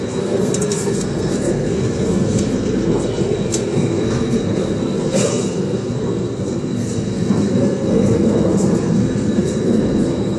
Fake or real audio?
fake